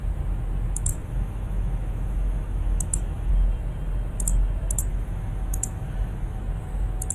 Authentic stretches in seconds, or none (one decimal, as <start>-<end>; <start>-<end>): 0.0-0.9; 3.3-4.9; 6.4-7.1